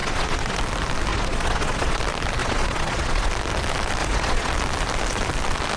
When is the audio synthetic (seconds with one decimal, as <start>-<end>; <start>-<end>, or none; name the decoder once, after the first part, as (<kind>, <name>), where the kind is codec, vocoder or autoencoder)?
0.0-0.6 (vocoder, Vocos); 1.1-2.0; 2.4-3.3; 4.0-4.5